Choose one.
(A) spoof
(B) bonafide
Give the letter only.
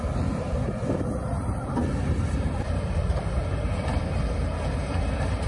A